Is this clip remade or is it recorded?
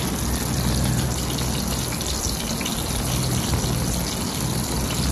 recorded